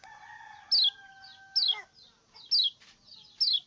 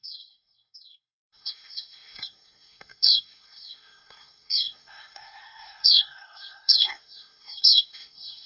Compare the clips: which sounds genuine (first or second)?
first